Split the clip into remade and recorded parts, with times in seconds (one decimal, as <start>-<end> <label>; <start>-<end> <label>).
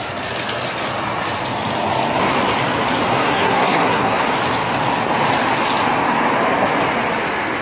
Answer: 0.0-3.2 recorded; 3.2-4.2 remade; 4.2-7.6 recorded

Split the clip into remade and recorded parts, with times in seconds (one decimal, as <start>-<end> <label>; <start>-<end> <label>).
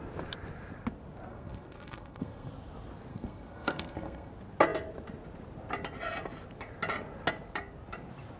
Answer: 0.0-1.3 recorded; 1.3-2.5 remade; 2.5-3.1 recorded; 3.1-4.3 remade; 4.3-8.4 recorded